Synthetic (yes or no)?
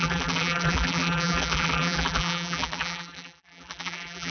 yes